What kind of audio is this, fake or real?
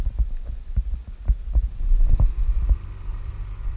real